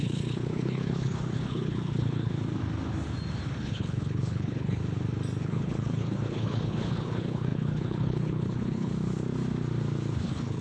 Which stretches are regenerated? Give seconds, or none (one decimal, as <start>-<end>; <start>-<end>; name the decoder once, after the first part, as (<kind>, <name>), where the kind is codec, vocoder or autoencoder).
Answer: 0.0-2.3 (codec, HILCodec); 3.6-4.8; 5.4-8.9; 10.2-10.6